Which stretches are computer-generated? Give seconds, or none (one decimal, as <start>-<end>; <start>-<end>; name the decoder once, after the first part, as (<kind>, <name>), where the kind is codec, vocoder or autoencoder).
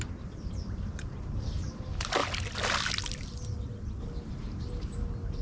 none